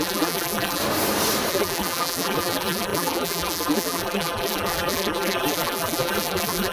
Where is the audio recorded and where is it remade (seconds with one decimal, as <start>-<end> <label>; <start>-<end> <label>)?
0.0-0.8 remade; 0.8-1.5 recorded; 1.5-6.7 remade